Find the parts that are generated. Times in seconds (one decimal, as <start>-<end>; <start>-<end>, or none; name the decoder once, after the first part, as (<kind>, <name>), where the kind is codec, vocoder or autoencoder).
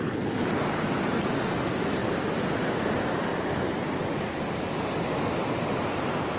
2.0-2.6 (vocoder, BigVGAN v2); 3.3-5.1